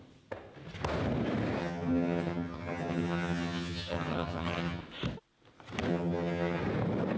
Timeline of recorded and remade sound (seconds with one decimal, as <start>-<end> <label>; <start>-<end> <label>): 0.0-1.6 recorded; 1.6-4.8 remade; 4.8-5.9 recorded; 5.9-6.6 remade; 6.6-7.2 recorded